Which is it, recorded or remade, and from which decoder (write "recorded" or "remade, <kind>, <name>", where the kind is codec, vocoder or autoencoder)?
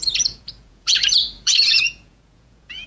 remade, vocoder, Vocos